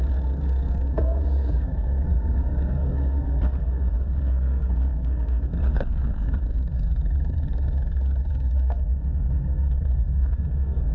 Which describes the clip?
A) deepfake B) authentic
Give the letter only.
A